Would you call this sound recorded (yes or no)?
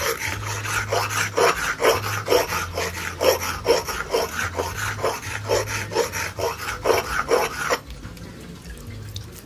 yes